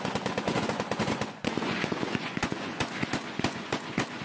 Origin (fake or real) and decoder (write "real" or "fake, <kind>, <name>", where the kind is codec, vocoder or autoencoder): fake, vocoder, Vocos